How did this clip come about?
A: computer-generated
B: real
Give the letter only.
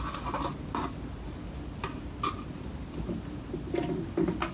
B